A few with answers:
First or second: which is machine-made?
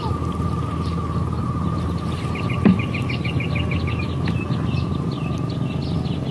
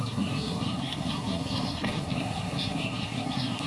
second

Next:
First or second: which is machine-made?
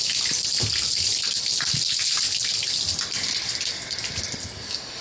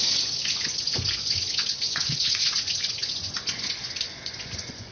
second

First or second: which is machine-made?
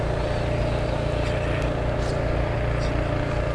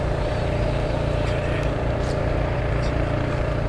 second